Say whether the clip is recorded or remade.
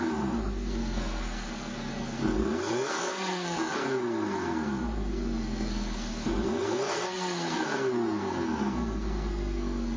remade